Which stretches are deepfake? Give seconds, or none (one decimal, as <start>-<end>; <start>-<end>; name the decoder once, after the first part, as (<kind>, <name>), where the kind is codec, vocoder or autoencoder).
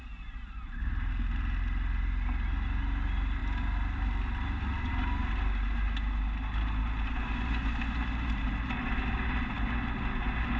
none